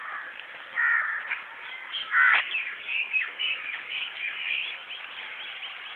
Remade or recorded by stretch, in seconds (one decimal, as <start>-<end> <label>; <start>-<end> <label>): 0.0-1.8 recorded; 1.8-4.5 remade; 4.5-6.0 recorded